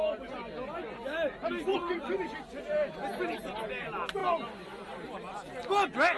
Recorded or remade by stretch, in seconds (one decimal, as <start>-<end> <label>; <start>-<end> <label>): 0.0-1.7 recorded; 1.7-2.3 remade; 2.3-6.2 recorded